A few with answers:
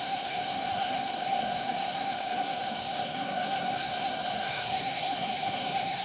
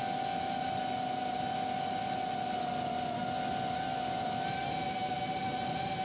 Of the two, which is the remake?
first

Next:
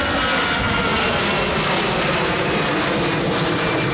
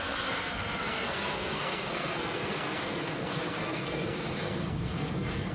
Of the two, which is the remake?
second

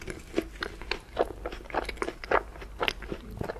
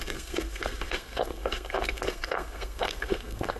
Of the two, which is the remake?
second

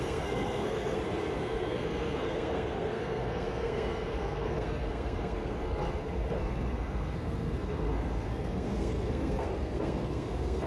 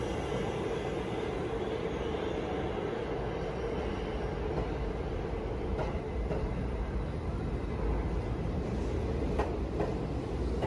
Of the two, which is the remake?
first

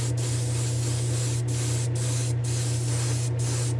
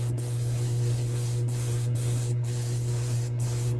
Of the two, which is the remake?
second